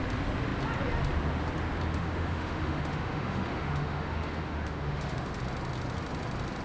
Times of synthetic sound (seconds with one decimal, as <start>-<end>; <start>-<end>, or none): 1.9-5.4